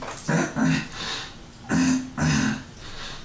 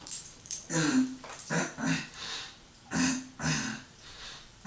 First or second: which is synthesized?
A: second